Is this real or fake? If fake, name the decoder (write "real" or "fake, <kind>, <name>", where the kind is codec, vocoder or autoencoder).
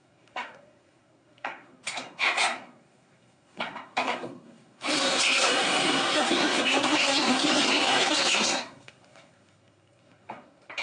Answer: fake, codec, SNAC